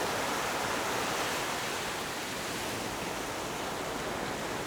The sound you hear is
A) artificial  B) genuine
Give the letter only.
A